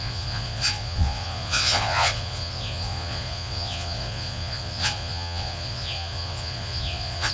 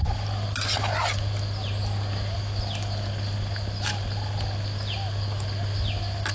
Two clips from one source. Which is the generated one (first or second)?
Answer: first